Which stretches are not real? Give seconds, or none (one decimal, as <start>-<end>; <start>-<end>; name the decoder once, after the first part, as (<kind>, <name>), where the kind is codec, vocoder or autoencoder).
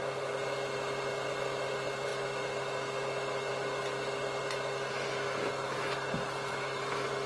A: none